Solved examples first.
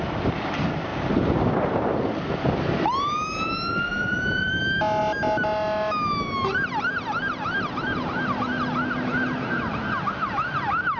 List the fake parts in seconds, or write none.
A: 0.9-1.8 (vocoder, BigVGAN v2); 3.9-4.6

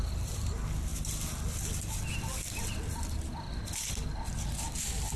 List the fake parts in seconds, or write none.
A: none

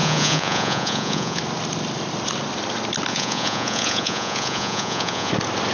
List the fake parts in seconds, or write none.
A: 0.0-1.4 (vocoder, Vocos); 3.1-5.3

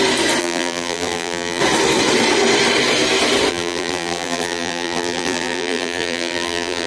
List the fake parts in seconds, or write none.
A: 0.4-1.6 (vocoder, BigVGAN v2); 3.5-6.9